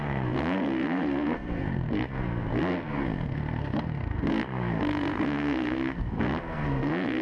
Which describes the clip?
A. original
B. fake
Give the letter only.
B